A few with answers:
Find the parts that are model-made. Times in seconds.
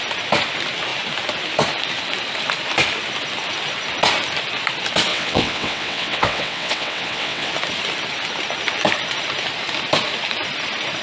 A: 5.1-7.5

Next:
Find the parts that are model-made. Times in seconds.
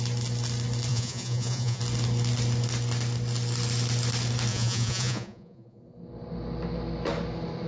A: 0.9-1.8; 4.5-5.8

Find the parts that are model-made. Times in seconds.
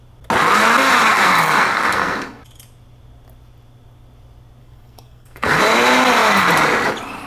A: 1.1-2.4; 4.6-5.6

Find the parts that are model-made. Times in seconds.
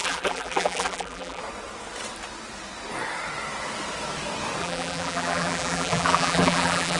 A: 0.0-1.4; 4.6-7.0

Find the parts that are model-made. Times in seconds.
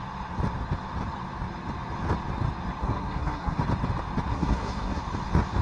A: 2.8-3.6; 4.3-5.0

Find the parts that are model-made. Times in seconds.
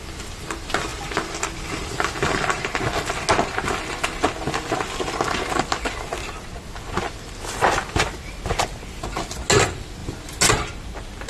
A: none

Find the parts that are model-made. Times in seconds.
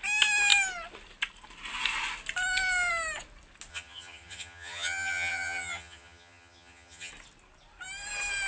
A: 3.7-7.1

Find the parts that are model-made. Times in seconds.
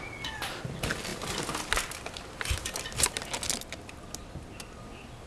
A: none